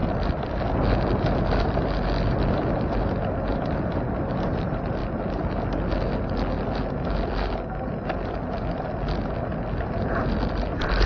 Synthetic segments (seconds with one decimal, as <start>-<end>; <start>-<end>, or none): none